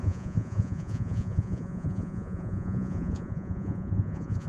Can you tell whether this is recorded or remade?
remade